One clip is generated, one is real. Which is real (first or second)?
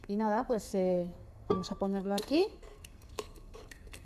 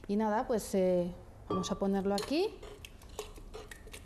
second